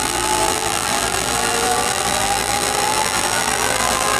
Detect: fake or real fake